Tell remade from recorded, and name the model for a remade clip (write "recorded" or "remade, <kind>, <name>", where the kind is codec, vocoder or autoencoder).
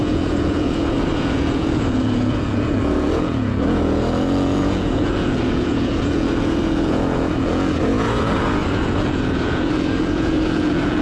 remade, vocoder, Vocos